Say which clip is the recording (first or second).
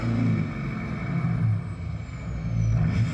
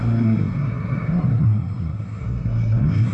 first